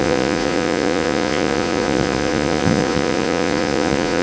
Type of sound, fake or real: fake